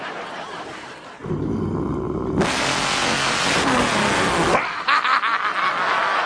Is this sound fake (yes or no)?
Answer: no